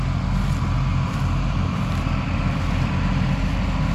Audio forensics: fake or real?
real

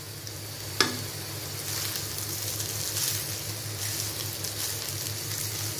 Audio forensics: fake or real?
real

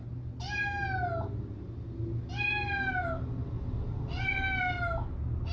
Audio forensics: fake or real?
real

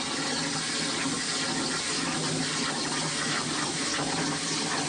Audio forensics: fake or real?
real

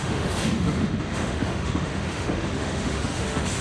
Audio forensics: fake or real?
fake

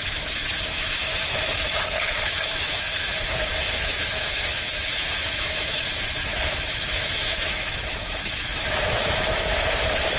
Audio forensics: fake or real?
fake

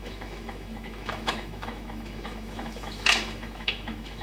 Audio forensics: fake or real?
fake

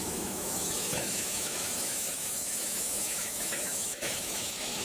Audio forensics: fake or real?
fake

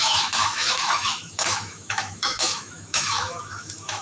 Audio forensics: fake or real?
fake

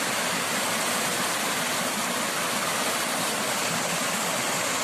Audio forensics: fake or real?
real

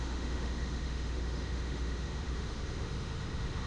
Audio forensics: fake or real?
fake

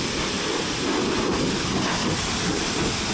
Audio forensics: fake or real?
real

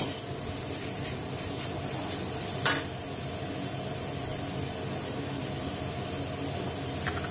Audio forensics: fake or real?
real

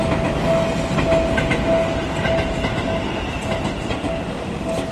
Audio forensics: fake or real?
real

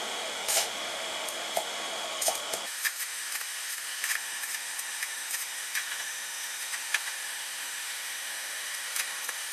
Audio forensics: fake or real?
fake